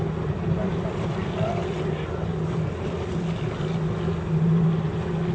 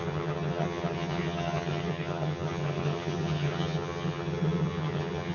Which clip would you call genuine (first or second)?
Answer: first